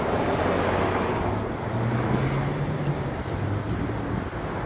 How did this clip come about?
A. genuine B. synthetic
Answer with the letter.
A